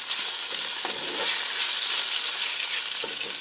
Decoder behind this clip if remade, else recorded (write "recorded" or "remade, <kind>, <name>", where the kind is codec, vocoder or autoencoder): recorded